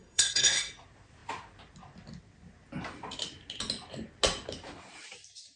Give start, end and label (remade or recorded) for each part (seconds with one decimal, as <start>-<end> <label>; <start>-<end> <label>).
0.0-0.7 remade; 0.7-5.6 recorded